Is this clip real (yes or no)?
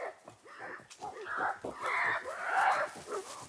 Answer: yes